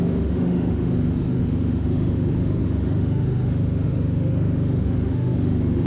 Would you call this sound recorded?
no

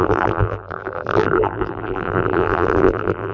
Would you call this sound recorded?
no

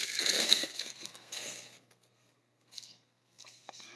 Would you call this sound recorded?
no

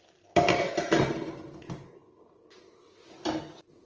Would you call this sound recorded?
yes